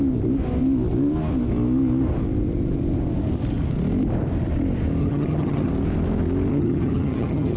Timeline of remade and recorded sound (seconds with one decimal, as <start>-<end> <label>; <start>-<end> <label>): 0.0-5.0 recorded; 5.0-5.7 remade; 5.7-6.5 recorded; 6.5-7.6 remade